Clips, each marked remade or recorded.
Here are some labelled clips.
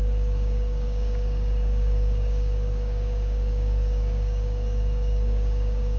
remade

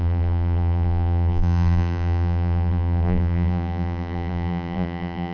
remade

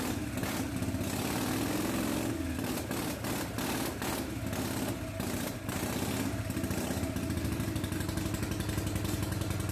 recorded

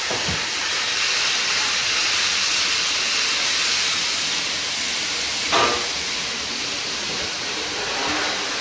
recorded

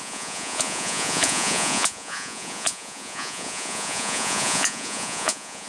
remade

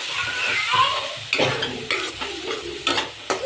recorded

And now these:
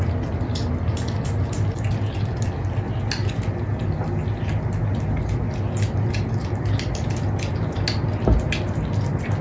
recorded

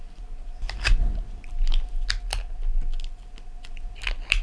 recorded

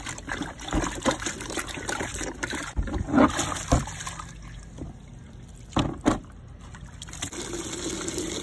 recorded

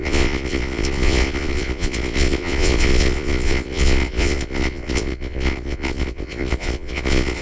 remade